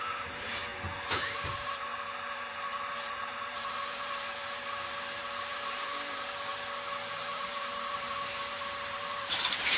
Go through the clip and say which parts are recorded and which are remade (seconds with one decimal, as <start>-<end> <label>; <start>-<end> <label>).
0.0-0.7 remade; 0.7-1.2 recorded; 1.2-6.5 remade; 6.5-7.1 recorded; 7.1-9.8 remade